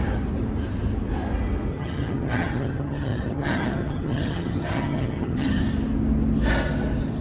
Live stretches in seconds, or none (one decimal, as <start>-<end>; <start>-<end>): 0.0-1.7; 5.6-7.2